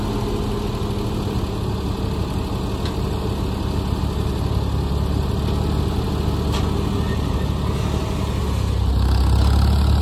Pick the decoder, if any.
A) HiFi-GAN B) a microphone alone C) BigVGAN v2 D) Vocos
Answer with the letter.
B